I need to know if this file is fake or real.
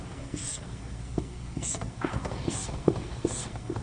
fake